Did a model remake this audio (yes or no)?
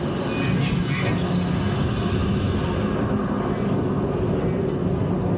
no